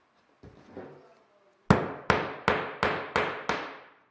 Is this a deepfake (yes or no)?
no